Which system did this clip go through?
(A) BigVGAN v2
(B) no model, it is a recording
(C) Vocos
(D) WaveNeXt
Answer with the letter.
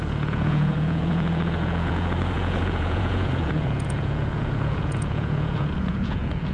C